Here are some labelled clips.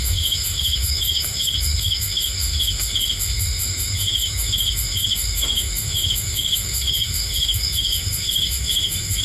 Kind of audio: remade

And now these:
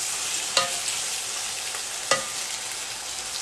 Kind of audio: recorded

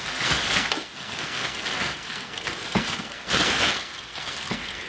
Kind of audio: remade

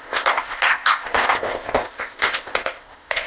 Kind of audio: remade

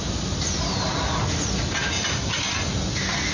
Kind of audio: recorded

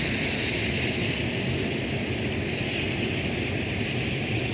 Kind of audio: recorded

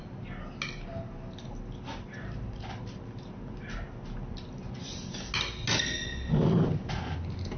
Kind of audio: recorded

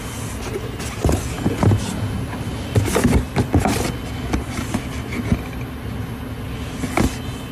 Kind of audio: recorded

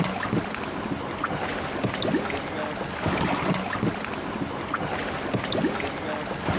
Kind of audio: recorded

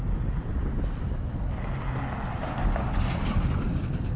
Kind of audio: recorded